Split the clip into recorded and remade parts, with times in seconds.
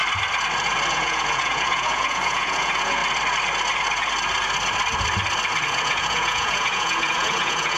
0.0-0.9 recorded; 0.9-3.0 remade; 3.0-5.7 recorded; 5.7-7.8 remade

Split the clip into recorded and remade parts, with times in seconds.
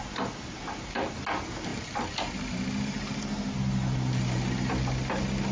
0.0-5.5 recorded